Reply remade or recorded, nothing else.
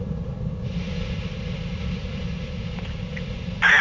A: remade